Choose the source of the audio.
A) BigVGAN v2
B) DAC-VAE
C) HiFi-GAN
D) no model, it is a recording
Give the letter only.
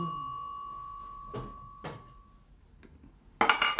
D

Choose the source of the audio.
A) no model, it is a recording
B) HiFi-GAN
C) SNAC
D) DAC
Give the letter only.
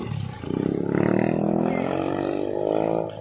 A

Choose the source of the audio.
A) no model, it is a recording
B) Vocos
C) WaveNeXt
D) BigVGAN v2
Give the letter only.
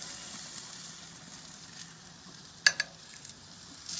A